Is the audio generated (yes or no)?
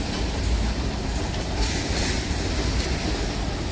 no